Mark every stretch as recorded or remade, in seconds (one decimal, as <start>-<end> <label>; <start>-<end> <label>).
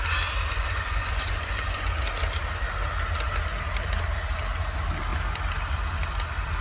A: 0.0-0.5 recorded; 0.5-1.9 remade; 1.9-6.6 recorded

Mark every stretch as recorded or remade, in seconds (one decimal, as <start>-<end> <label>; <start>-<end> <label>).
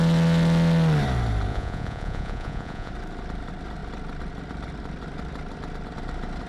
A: 0.0-1.5 recorded; 1.5-2.9 remade; 2.9-6.5 recorded